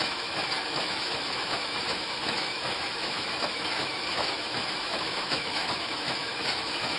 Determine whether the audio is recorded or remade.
remade